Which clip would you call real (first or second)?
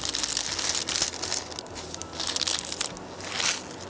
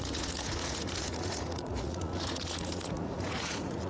first